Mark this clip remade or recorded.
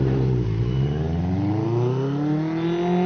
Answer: recorded